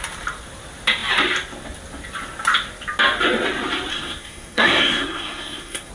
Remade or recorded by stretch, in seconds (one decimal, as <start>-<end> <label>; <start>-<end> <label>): 0.0-3.9 recorded; 3.9-5.9 remade